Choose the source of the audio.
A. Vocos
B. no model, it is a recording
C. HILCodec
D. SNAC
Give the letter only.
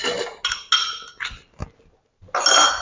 B